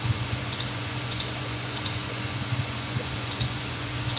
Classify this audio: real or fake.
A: fake